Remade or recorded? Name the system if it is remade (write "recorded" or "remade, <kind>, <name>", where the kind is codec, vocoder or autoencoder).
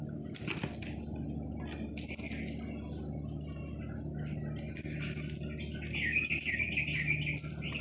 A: recorded